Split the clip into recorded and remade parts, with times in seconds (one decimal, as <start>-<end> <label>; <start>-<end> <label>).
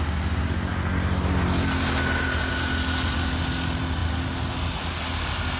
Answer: 0.0-5.6 recorded